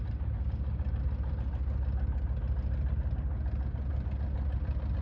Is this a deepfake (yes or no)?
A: no